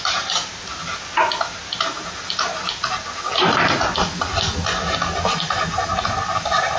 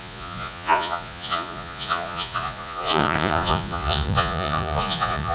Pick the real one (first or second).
first